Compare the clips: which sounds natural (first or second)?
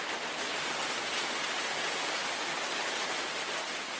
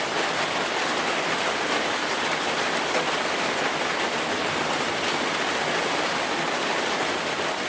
first